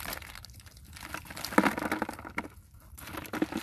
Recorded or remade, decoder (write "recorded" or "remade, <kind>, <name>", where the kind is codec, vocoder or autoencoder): recorded